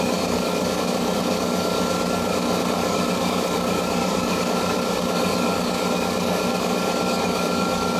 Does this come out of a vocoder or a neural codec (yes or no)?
yes